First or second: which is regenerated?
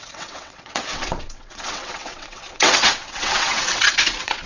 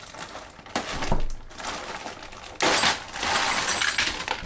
first